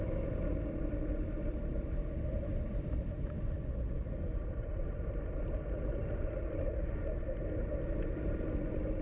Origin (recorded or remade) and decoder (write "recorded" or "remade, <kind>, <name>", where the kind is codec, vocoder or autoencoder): recorded